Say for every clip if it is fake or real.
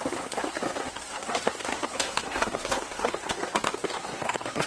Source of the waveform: fake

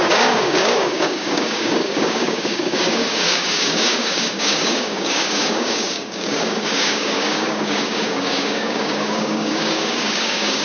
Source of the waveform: fake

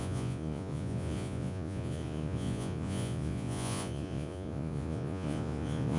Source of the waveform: fake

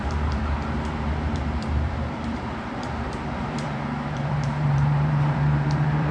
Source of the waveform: fake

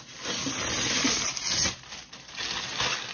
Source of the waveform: real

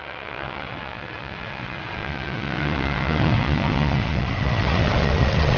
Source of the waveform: fake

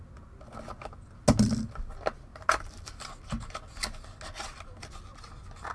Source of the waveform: real